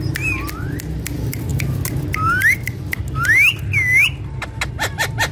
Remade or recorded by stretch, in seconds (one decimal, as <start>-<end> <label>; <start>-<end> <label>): 0.0-5.3 recorded